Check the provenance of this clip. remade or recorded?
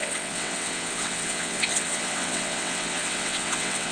remade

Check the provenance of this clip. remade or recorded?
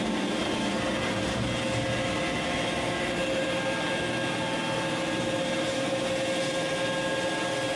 recorded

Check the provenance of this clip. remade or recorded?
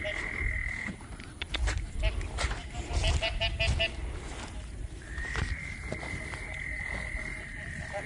remade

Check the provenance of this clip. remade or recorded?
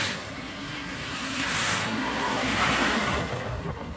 remade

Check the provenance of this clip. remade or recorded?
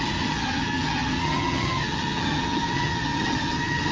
remade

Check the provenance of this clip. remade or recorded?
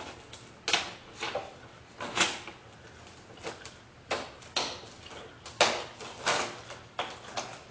recorded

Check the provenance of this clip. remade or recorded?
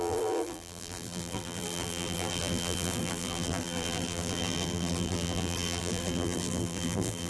remade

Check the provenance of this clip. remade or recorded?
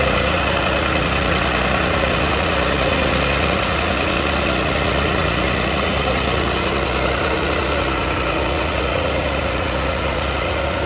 remade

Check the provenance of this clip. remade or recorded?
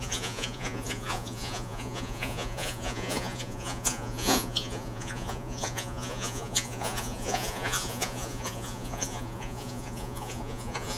remade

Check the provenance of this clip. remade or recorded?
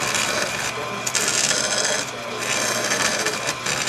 recorded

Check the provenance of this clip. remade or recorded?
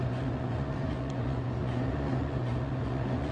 remade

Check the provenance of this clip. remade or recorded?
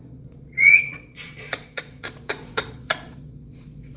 remade